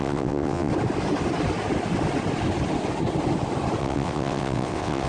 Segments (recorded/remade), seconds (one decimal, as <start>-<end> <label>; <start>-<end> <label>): 0.0-0.7 remade; 0.7-3.8 recorded; 3.8-5.1 remade